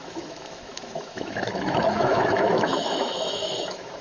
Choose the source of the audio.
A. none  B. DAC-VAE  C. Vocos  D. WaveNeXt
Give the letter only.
B